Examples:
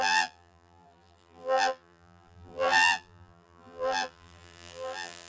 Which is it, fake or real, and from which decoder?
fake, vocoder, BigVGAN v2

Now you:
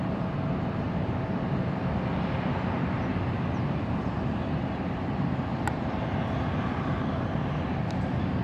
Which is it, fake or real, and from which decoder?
real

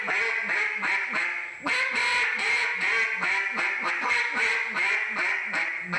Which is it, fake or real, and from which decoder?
real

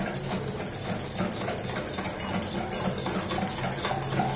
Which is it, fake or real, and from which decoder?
real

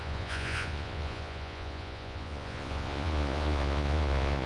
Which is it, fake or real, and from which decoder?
fake, vocoder, Vocos